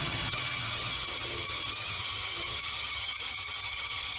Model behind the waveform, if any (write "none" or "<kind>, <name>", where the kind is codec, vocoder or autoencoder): vocoder, HiFi-GAN